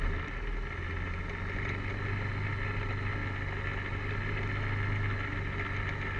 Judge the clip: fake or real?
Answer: real